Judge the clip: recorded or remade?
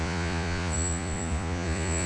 remade